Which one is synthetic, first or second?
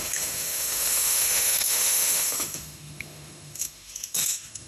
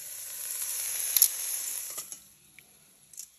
first